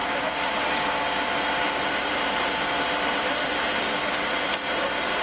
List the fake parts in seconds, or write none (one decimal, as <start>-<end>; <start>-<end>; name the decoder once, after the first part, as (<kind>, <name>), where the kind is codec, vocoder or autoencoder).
0.0-5.2 (vocoder, BigVGAN v2)